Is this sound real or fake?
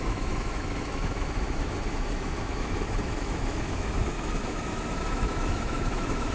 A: fake